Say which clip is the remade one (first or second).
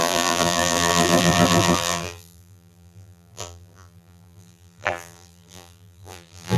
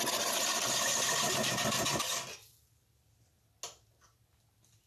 first